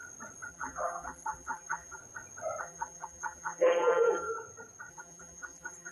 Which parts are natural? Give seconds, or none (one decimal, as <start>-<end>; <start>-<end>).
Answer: 0.0-0.5; 2.0-2.6; 4.3-4.9